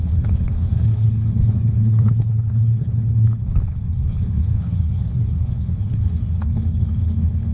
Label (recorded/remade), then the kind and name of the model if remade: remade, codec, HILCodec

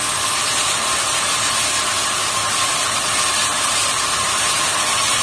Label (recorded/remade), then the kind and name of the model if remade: recorded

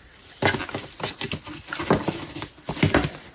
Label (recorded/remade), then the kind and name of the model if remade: recorded